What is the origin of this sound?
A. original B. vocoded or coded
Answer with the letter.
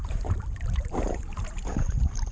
B